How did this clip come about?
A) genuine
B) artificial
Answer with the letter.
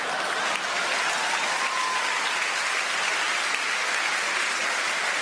A